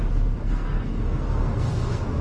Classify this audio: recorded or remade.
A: remade